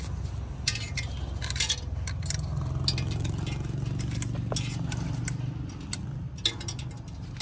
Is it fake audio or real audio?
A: real